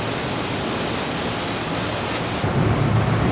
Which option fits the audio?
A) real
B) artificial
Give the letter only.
A